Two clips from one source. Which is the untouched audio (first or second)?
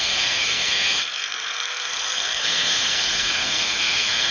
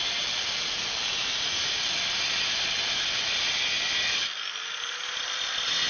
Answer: second